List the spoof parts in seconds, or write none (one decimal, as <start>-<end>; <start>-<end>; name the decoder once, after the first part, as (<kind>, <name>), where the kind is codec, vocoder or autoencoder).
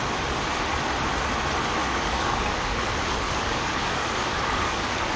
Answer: 1.8-5.2 (codec, DAC)